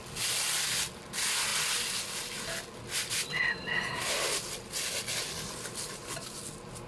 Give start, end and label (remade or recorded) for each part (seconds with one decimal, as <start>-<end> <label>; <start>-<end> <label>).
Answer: 0.0-6.9 recorded